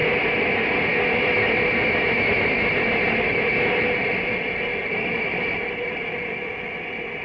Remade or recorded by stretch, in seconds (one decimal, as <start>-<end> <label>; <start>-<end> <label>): 0.0-4.9 recorded; 4.9-6.6 remade; 6.6-7.2 recorded